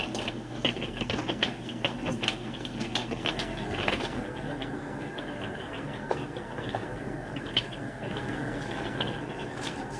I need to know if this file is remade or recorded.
remade